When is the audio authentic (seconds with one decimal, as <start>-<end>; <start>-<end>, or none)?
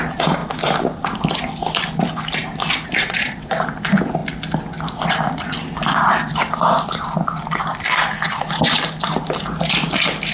0.0-3.0; 3.6-10.3